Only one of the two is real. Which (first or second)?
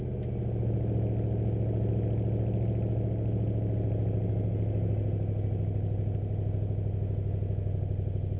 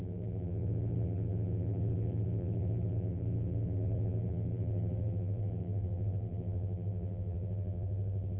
first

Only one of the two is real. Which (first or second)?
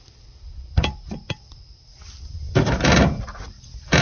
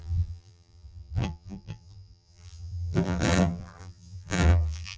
first